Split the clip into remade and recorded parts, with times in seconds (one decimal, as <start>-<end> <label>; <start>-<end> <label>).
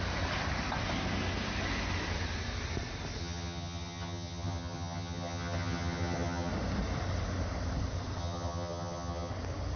0.0-3.2 recorded; 3.2-6.5 remade; 6.5-8.2 recorded; 8.2-9.3 remade; 9.3-9.8 recorded